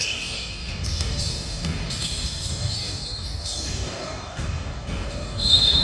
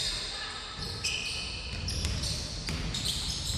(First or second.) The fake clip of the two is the first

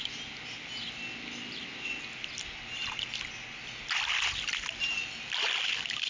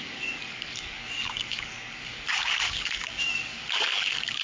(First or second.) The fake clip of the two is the second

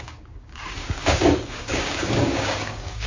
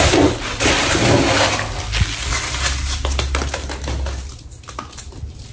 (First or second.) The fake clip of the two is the first